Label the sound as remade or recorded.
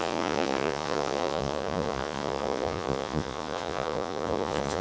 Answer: remade